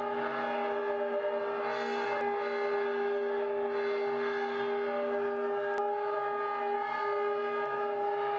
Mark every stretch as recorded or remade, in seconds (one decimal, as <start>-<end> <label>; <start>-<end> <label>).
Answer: 0.0-8.4 recorded